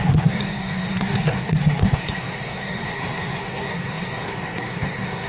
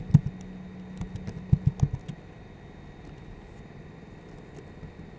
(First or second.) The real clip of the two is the second